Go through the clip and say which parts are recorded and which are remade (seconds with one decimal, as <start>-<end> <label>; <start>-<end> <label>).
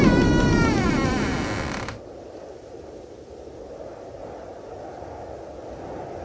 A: 0.0-6.2 recorded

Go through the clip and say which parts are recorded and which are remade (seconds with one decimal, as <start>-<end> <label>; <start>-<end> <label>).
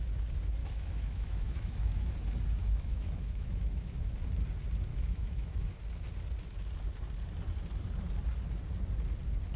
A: 0.0-0.6 recorded; 0.6-2.1 remade; 2.1-2.6 recorded; 2.6-4.1 remade; 4.1-4.9 recorded; 4.9-5.7 remade; 5.7-9.6 recorded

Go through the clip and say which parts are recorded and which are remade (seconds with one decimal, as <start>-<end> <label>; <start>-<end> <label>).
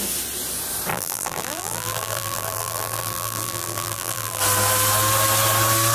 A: 0.0-0.9 recorded; 0.9-4.4 remade; 4.4-5.9 recorded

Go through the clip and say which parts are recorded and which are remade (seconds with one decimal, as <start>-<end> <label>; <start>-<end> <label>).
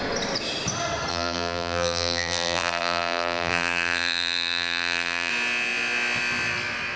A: 0.0-1.1 recorded; 1.1-5.3 remade; 5.3-7.0 recorded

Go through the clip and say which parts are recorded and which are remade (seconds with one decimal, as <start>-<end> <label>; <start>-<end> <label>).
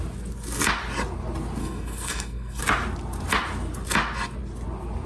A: 0.0-1.6 recorded; 1.6-2.6 remade; 2.6-5.1 recorded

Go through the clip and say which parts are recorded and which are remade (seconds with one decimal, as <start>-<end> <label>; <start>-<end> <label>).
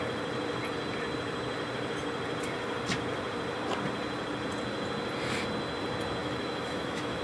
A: 0.0-6.2 recorded; 6.2-7.2 remade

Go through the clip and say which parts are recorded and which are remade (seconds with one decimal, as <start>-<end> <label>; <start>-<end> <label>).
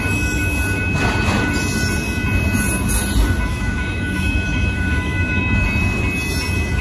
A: 0.0-3.5 recorded; 3.5-5.4 remade; 5.4-6.8 recorded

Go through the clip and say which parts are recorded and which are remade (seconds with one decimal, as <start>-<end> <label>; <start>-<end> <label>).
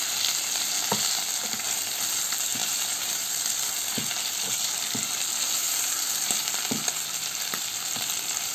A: 0.0-2.6 recorded; 2.6-3.4 remade; 3.4-5.6 recorded; 5.6-6.5 remade; 6.5-8.5 recorded